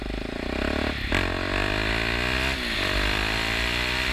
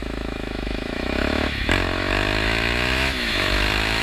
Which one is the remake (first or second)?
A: second